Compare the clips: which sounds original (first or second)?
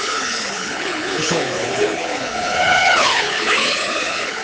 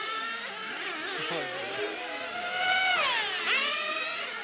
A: second